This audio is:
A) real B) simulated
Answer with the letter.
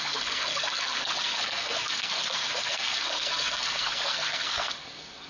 B